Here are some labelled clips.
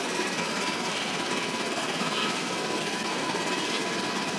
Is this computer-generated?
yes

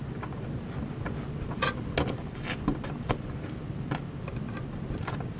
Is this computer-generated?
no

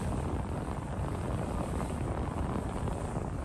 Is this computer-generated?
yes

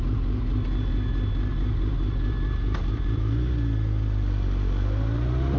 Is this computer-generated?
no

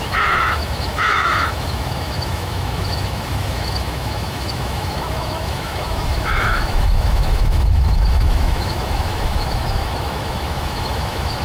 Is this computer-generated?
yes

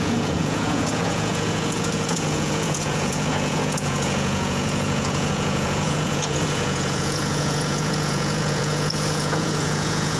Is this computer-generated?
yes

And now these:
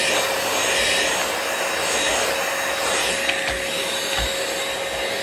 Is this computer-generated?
no